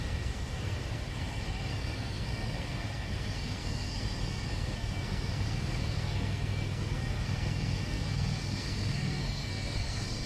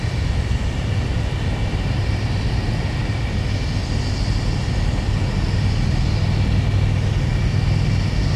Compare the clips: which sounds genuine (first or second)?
second